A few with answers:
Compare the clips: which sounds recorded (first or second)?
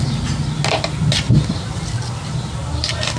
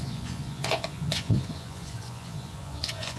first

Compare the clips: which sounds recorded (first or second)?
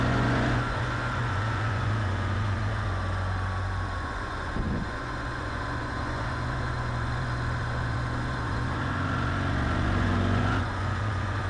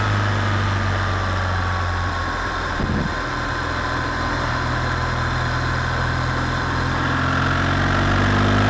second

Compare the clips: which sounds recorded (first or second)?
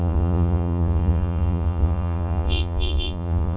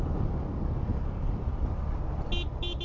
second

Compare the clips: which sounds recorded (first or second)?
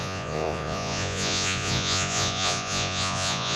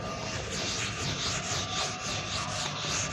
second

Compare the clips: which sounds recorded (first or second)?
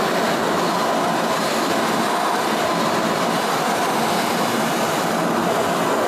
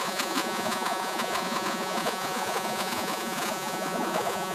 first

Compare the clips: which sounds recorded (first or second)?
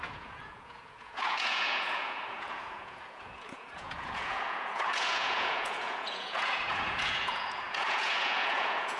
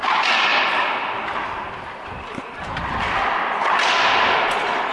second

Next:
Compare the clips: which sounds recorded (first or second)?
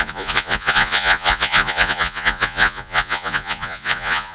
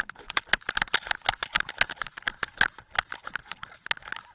second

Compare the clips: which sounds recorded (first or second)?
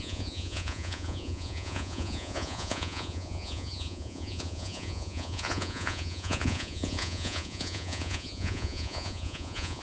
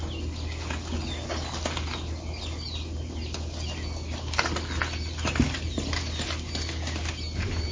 second